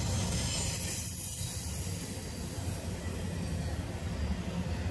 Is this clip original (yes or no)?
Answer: yes